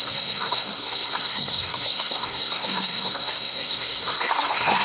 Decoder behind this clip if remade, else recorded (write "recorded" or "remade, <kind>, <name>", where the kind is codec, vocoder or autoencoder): remade, codec, SNAC